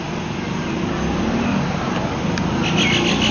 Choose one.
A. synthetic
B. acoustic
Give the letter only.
B